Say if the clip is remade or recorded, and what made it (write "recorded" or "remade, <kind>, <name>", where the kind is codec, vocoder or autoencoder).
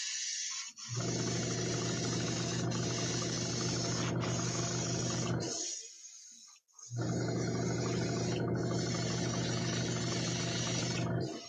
recorded